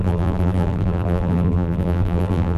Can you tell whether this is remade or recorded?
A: remade